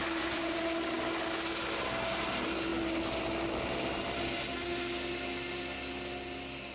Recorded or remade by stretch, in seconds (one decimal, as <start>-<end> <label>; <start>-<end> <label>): 0.0-0.6 remade; 0.6-6.7 recorded